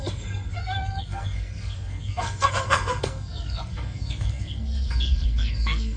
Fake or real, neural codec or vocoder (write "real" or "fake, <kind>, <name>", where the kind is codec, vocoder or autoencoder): fake, codec, SNAC